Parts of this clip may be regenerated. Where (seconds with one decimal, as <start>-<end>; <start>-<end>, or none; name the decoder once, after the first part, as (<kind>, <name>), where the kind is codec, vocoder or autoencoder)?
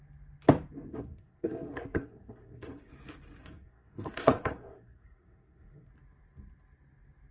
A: 0.9-2.9 (codec, SNAC); 3.4-5.9